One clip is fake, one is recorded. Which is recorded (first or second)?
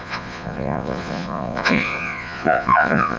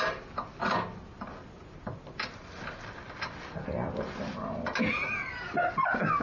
second